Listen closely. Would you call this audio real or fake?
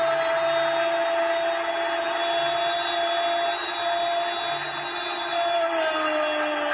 real